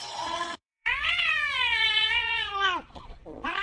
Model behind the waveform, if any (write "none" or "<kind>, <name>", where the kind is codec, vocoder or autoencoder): vocoder, Vocos